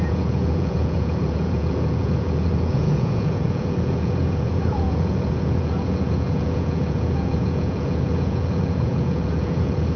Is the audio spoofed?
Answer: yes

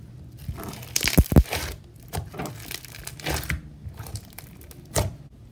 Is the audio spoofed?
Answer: no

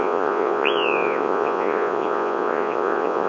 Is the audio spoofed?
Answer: yes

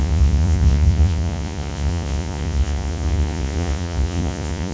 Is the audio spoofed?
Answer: yes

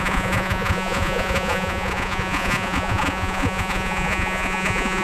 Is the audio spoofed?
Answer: yes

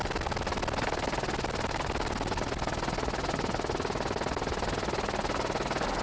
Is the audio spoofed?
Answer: no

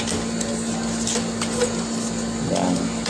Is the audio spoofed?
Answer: no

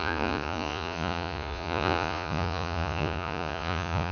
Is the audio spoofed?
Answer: yes